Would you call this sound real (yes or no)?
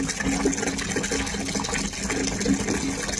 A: yes